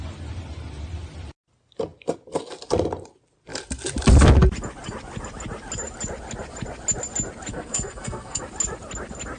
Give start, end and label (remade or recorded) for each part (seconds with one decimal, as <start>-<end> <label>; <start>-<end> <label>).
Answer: 0.0-7.5 recorded; 7.5-8.4 remade; 8.4-9.4 recorded